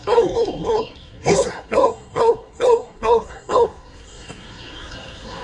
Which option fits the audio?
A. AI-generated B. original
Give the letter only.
A